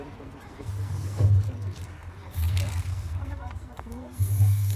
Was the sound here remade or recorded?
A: remade